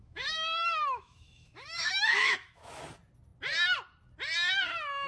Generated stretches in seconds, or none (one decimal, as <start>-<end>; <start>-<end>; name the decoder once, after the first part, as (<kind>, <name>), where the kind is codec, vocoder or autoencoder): 0.0-2.8 (autoencoder, DAC-VAE)